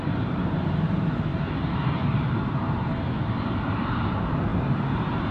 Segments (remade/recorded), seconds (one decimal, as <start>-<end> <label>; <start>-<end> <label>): 0.0-1.3 remade; 1.3-2.4 recorded; 2.4-2.9 remade; 2.9-4.0 recorded; 4.0-5.3 remade